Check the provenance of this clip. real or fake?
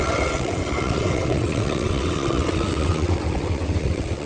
fake